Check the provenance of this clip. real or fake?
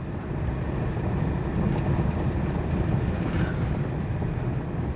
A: real